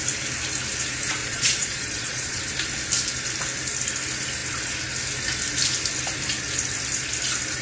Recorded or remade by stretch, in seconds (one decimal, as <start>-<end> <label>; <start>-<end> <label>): 0.0-1.2 recorded; 1.2-2.4 remade; 2.4-7.6 recorded